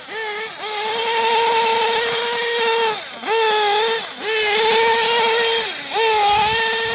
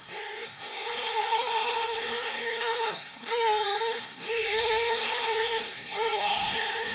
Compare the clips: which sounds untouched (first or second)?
first